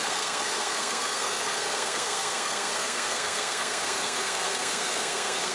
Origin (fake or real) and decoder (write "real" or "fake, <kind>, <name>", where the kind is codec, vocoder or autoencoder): fake, codec, SNAC